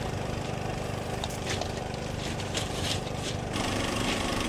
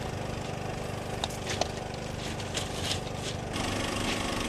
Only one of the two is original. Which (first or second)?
second